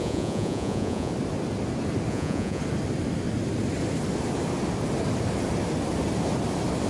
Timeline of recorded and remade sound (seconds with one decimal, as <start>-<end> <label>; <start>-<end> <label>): 0.0-1.1 remade; 1.1-2.1 recorded; 2.1-2.6 remade; 2.6-6.9 recorded